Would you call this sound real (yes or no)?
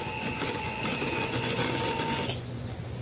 no